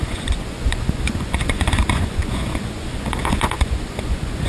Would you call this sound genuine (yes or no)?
no